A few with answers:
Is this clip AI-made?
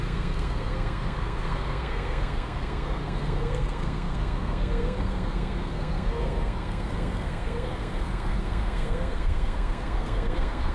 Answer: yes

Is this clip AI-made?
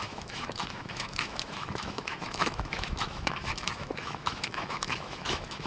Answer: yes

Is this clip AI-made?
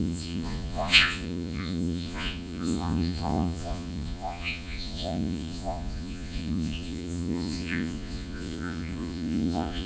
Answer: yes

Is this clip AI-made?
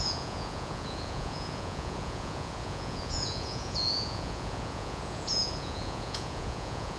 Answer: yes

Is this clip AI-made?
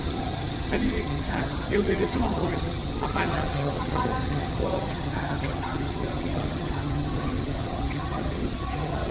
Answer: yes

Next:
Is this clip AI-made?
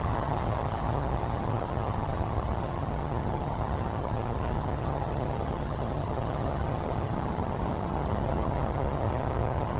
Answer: yes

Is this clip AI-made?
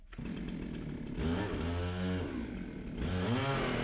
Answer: no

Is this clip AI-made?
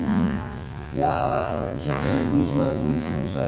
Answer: yes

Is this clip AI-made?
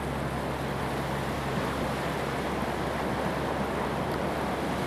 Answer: no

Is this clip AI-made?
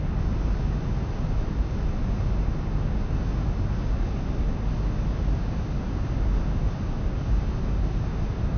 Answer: no